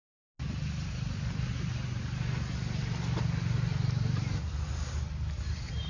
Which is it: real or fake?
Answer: real